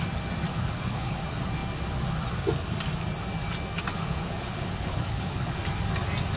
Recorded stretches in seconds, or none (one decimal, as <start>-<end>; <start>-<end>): 0.0-0.5; 1.2-3.9; 5.6-6.4

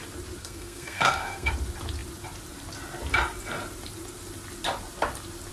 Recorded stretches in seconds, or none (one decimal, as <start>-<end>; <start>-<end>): 0.0-0.4; 1.5-5.5